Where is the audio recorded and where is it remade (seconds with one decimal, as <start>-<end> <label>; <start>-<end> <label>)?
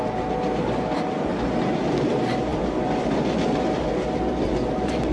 0.0-5.1 recorded